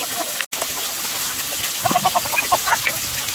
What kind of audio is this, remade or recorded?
recorded